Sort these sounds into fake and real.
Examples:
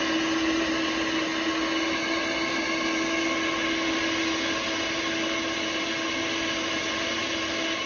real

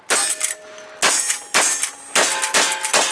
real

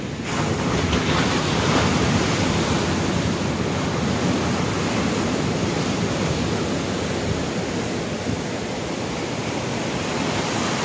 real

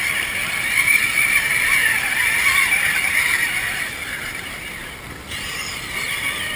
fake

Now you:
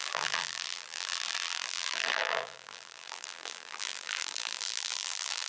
fake